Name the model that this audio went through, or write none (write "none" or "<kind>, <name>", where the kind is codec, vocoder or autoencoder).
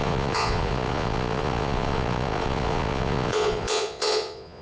vocoder, Vocos